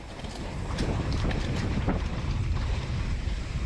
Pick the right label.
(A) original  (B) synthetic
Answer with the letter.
B